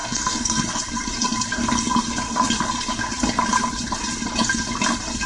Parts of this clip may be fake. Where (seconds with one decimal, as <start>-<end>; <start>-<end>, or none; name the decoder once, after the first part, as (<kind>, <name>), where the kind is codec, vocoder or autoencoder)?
0.0-0.6 (codec, SNAC)